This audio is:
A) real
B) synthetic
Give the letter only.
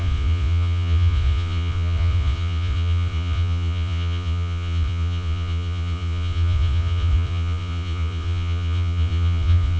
B